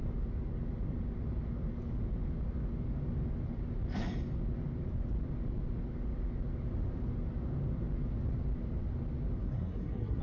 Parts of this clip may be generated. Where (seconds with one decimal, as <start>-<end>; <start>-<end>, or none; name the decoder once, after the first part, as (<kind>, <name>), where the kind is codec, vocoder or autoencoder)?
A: 9.4-10.2 (codec, SNAC)